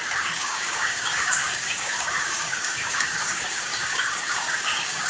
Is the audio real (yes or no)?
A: no